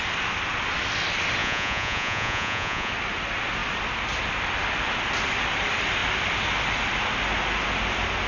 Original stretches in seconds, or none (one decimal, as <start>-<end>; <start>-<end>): 0.0-1.4; 2.9-8.3

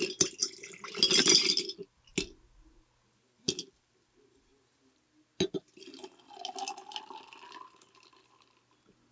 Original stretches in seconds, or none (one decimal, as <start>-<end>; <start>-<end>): 0.0-9.1

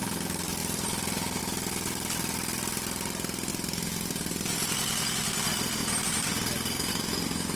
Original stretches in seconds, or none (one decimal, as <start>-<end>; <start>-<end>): 0.0-0.6; 1.4-3.5; 4.5-5.8; 6.9-7.6

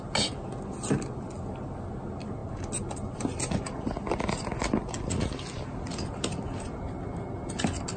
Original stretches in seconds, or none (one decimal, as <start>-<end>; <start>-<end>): 0.0-8.0

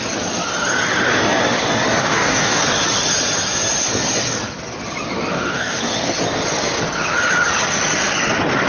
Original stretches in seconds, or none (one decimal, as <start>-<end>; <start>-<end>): 0.0-2.0; 2.6-5.3; 5.8-8.7